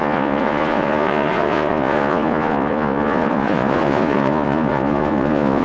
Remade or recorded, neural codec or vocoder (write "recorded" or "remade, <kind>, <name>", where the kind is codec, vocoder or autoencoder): remade, vocoder, Vocos